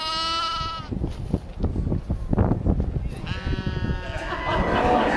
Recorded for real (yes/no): yes